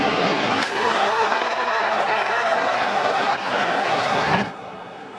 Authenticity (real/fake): fake